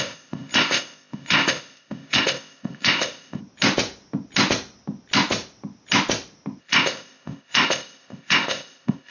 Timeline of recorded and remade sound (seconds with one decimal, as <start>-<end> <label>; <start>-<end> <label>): 0.0-3.4 remade; 3.4-6.6 recorded; 6.6-9.1 remade